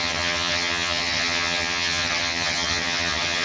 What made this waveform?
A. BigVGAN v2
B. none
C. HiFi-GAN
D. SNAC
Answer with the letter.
C